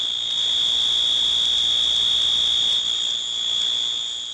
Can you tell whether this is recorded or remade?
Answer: recorded